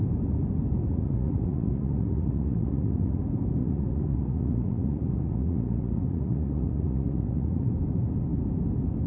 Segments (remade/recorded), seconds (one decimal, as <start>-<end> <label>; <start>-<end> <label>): 0.0-0.9 recorded; 0.9-3.2 remade; 3.2-3.6 recorded; 3.6-7.7 remade; 7.7-9.1 recorded